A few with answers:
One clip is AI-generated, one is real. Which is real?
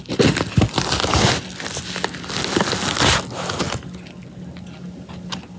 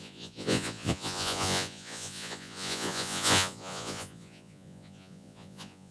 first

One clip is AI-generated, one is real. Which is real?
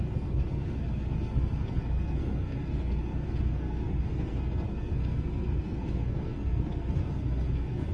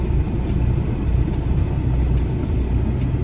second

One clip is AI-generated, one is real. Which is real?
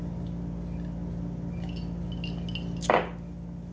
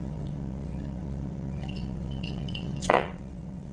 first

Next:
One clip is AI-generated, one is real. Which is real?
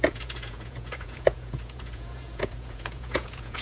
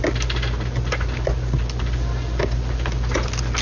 second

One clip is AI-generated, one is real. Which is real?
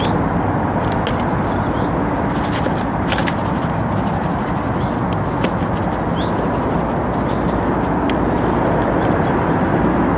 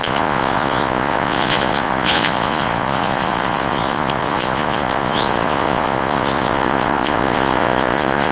first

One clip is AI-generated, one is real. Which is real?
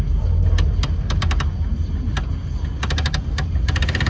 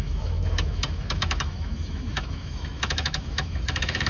first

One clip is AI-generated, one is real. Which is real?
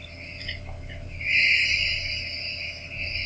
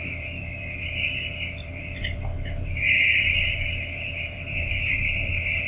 first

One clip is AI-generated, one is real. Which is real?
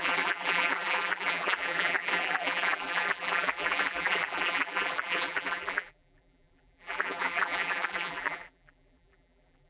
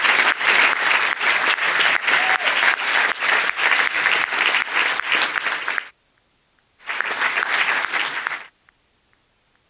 second